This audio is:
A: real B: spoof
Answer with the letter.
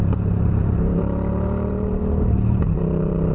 B